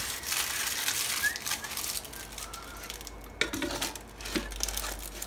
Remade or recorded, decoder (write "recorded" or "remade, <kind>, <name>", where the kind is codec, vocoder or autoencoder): recorded